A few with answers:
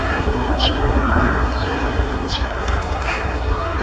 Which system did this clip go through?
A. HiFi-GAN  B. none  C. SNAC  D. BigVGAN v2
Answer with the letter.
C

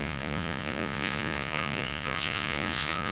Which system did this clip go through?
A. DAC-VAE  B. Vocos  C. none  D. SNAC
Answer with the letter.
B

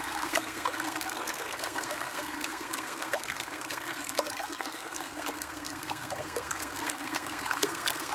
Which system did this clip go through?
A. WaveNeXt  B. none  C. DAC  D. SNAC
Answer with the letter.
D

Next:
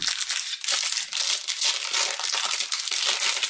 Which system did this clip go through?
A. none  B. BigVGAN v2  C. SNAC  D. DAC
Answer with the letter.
A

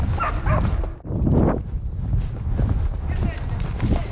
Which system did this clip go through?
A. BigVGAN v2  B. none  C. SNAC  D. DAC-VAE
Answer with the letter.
B